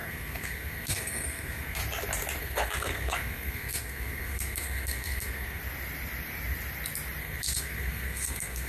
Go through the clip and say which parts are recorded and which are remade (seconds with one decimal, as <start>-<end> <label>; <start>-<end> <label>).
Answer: 0.0-1.8 remade; 1.8-2.4 recorded; 2.4-5.6 remade; 5.6-7.2 recorded; 7.2-8.7 remade